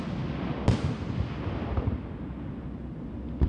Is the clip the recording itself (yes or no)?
yes